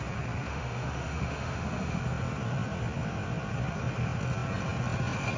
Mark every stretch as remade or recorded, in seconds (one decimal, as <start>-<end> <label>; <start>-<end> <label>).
0.0-0.5 recorded; 0.5-2.0 remade; 2.0-5.4 recorded